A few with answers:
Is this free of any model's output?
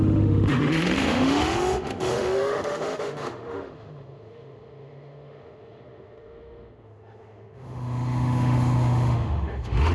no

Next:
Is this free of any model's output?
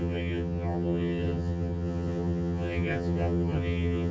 no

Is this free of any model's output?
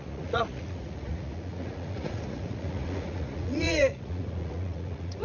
no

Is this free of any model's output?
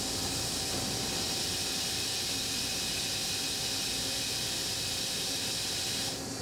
yes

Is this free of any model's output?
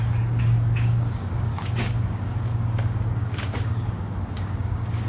no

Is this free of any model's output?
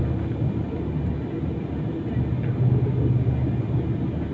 yes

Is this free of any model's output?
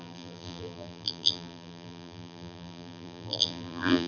no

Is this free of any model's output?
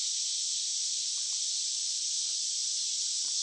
no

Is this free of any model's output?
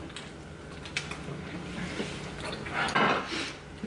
yes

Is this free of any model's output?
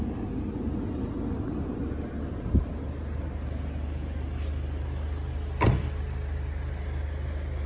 yes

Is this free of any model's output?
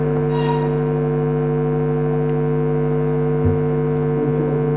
yes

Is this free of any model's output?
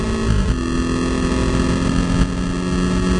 yes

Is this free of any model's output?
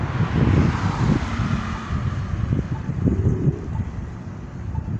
yes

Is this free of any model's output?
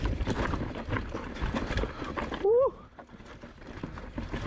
no